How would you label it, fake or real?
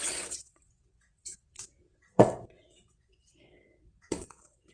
fake